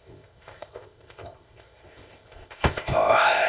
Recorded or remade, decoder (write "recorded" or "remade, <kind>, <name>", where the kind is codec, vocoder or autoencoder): remade, codec, ZipCodec